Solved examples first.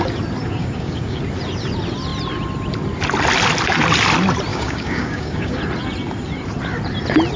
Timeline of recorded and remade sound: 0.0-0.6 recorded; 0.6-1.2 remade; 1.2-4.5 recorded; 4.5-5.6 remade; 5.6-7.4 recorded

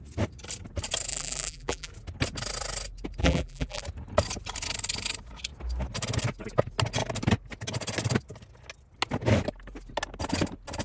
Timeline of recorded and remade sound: 0.0-1.1 recorded; 1.1-1.9 remade; 1.9-3.2 recorded; 3.2-3.8 remade; 3.8-10.8 recorded

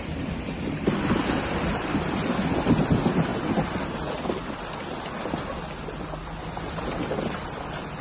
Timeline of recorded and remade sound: 0.0-8.0 recorded

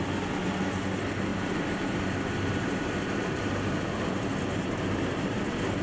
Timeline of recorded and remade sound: 0.0-1.3 recorded; 1.3-3.7 remade; 3.7-5.8 recorded

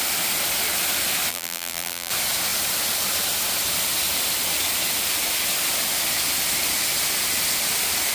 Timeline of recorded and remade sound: 0.0-1.3 recorded; 1.3-2.1 remade; 2.1-8.1 recorded

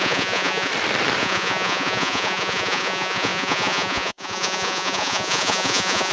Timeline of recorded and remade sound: 0.0-0.7 remade; 0.7-1.2 recorded; 1.2-6.1 remade